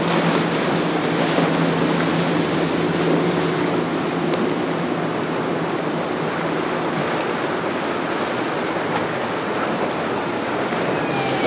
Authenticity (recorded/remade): recorded